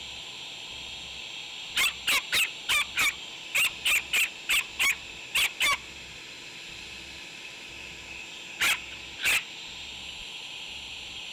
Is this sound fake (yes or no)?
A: no